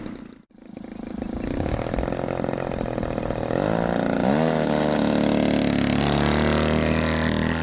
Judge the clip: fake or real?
real